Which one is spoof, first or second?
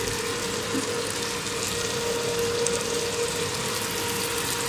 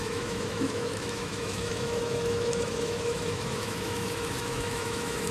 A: second